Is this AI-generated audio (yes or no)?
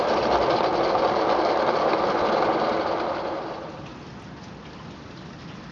no